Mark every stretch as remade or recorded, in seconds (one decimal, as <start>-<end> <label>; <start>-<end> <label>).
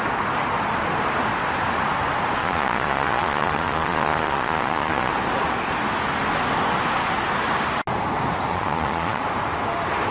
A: 0.0-2.4 recorded; 2.4-5.1 remade; 5.1-8.5 recorded; 8.5-9.2 remade; 9.2-10.1 recorded